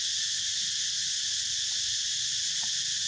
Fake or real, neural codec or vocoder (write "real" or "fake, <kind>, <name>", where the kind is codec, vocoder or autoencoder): real